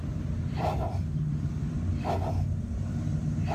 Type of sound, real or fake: fake